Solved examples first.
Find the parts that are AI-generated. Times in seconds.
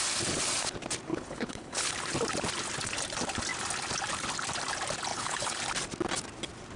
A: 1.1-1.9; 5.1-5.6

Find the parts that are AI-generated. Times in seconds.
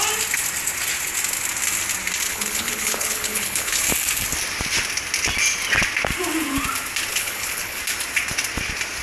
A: 2.3-3.8; 7.1-7.8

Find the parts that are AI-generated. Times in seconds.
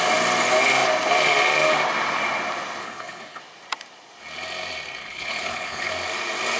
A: 2.8-3.4; 5.0-5.9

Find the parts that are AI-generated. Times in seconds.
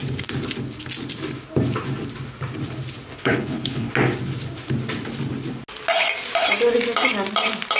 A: 3.1-3.9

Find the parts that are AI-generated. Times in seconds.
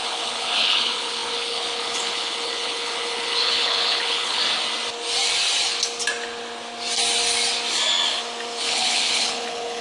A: 0.0-4.4; 8.6-9.8